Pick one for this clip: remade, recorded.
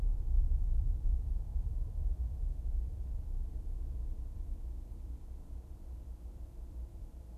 remade